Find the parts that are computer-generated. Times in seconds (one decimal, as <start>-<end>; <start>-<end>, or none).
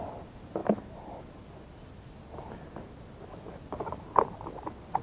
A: none